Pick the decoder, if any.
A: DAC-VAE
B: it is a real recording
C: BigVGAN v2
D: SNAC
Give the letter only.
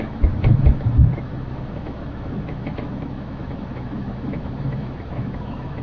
A